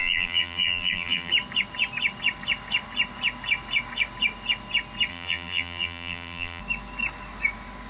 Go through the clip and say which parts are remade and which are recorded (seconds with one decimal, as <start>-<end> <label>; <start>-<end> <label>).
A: 0.0-1.3 remade; 1.3-5.1 recorded; 5.1-6.6 remade; 6.6-7.9 recorded